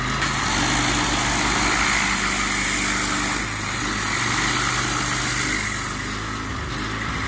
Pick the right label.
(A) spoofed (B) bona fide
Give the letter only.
B